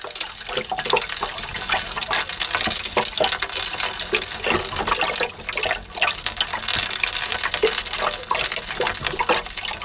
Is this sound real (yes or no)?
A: yes